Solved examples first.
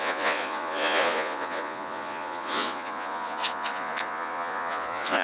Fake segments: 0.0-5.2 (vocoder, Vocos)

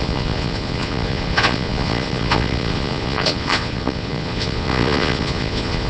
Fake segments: 0.0-5.9 (vocoder, Vocos)

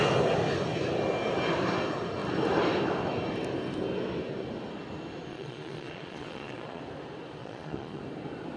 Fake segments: 5.3-6.8 (vocoder, Vocos); 7.4-8.0

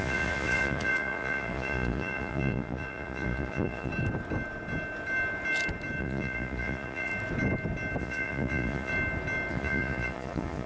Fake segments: 0.0-3.9 (vocoder, Vocos); 6.0-7.1; 8.0-8.9; 9.5-10.7

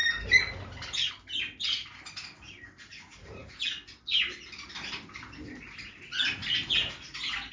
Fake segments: none

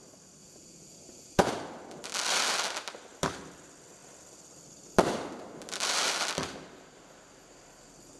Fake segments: 0.4-1.5 (vocoder, Vocos)

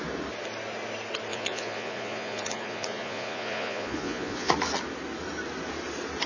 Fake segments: 1.3-4.5 (vocoder, Vocos)